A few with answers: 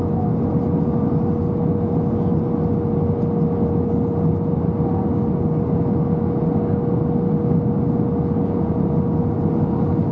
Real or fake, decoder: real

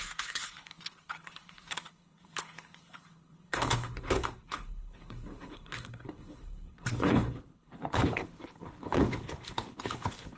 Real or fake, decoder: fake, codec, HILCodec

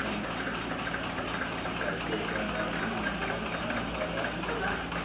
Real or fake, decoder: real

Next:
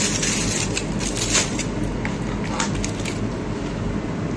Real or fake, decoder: real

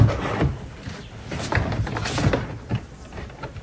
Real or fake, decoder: real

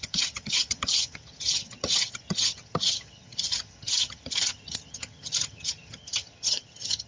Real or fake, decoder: fake, vocoder, HiFi-GAN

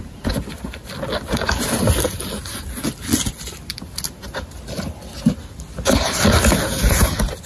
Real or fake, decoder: real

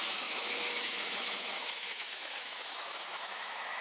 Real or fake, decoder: fake, autoencoder, DAC-VAE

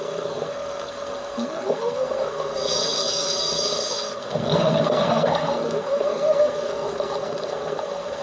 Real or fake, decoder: fake, codec, SNAC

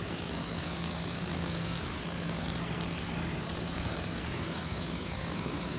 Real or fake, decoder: fake, codec, SNAC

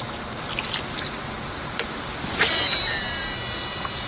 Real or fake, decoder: real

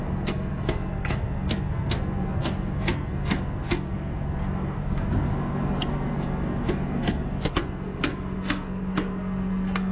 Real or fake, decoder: fake, codec, SNAC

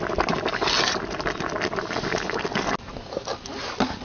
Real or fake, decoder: real